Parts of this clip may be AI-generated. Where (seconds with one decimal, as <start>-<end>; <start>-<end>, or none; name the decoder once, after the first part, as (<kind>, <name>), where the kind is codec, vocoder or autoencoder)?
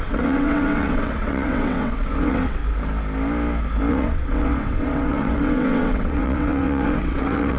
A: 0.0-2.6 (vocoder, WaveNeXt); 3.9-7.6